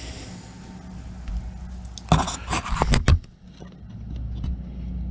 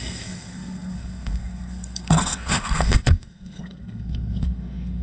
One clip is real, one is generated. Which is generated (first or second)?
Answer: second